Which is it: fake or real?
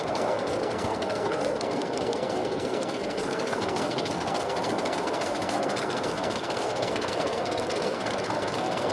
fake